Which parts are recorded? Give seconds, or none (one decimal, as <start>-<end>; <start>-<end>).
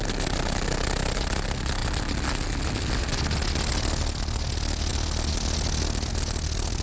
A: 0.0-6.8